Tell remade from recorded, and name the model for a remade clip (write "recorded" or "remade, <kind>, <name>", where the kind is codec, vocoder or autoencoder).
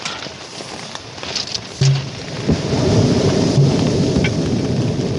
recorded